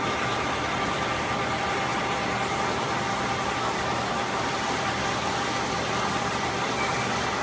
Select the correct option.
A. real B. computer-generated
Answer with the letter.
B